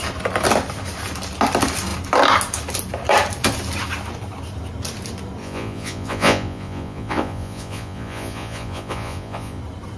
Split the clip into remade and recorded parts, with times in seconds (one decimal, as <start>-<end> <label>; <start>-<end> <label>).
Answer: 0.0-5.4 recorded; 5.4-9.6 remade; 9.6-10.0 recorded